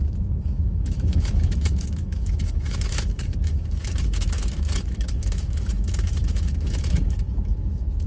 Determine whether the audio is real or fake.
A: fake